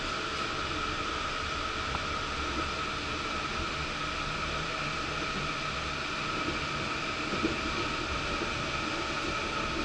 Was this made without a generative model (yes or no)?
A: yes